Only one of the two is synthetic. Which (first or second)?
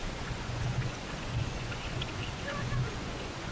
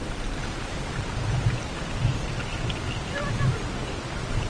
first